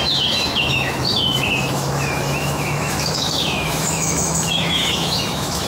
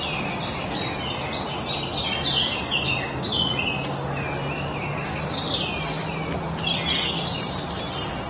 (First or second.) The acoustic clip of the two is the second